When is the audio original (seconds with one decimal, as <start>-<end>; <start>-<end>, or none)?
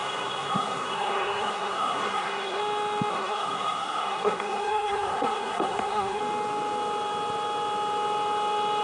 2.6-3.1; 6.2-8.8